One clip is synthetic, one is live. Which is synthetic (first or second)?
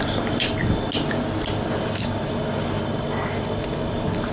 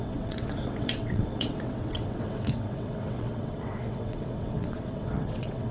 second